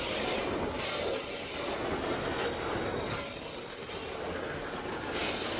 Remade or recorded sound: recorded